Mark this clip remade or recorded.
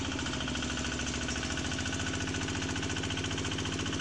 recorded